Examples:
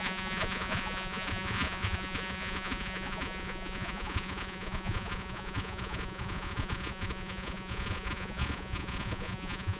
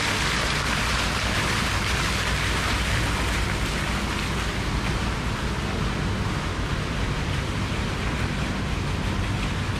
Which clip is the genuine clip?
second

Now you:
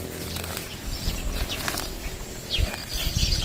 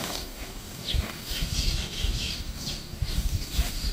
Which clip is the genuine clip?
first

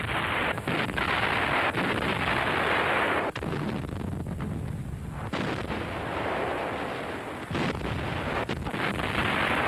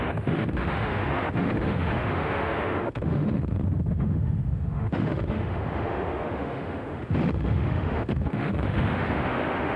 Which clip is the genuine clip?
first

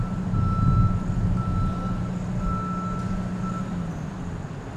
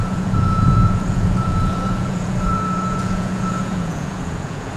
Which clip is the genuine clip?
first